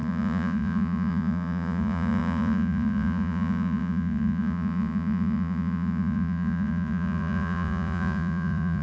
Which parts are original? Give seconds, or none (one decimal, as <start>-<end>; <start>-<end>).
none